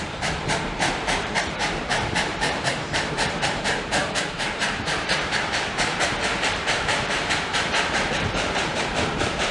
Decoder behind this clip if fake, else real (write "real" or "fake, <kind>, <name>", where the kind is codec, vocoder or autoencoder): fake, vocoder, BigVGAN v2